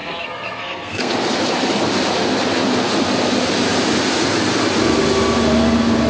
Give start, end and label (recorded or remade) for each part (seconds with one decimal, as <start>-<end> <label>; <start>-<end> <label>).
0.0-1.1 remade; 1.1-6.1 recorded